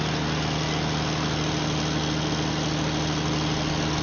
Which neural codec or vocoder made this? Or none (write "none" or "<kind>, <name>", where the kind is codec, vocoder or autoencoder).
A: none